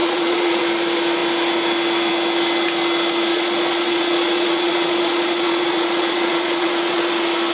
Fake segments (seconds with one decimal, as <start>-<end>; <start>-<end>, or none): 0.0-0.6; 3.3-7.1